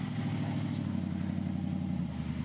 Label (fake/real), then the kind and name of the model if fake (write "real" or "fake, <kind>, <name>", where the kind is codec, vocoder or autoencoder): real